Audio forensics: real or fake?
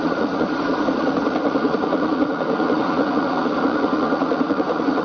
fake